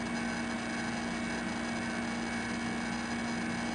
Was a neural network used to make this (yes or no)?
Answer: no